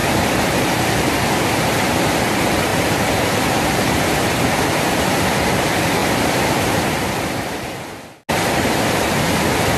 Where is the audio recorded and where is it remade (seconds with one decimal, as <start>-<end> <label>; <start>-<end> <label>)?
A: 0.0-0.9 remade; 0.9-2.7 recorded; 2.7-4.6 remade; 4.6-9.8 recorded